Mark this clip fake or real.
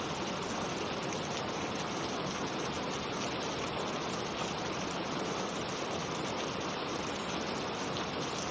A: fake